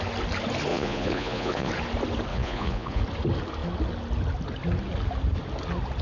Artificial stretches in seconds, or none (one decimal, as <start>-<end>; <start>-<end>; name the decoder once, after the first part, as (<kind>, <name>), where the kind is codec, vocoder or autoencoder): 0.7-1.7 (vocoder, Vocos); 2.3-3.0